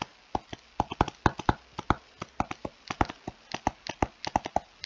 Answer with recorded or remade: recorded